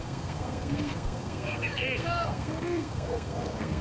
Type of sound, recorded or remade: remade